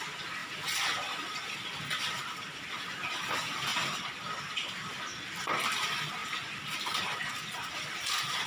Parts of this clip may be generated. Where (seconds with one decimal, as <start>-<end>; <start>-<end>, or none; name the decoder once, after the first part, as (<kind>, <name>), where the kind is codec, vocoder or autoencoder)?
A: 0.4-3.3 (vocoder, BigVGAN v2); 3.7-5.4; 6.2-7.3